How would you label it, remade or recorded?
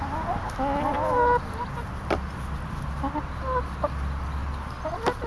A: recorded